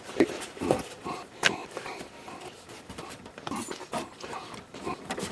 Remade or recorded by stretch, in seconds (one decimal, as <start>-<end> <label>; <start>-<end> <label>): 0.0-5.3 remade

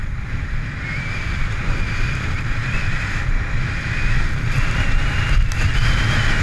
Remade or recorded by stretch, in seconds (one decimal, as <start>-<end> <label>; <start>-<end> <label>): 0.0-6.4 recorded